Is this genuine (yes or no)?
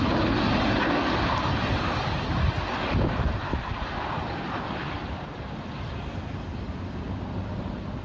yes